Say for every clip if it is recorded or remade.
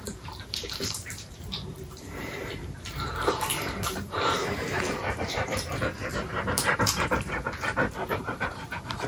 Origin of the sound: remade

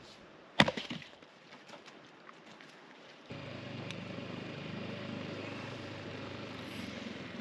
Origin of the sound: remade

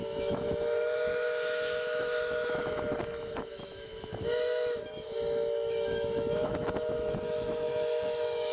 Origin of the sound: remade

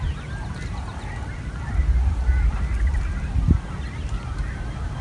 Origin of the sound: recorded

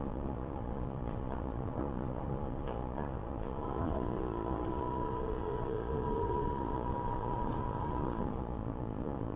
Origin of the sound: remade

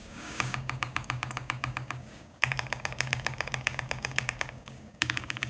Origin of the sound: remade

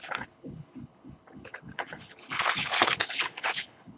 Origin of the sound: remade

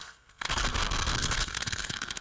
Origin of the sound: remade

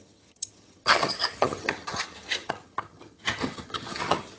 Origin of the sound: remade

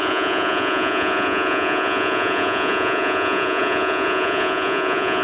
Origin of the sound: remade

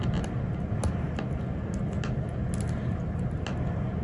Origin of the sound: recorded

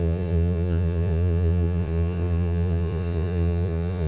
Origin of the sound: remade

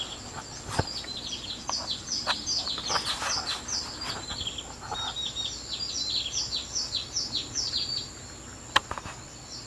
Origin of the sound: recorded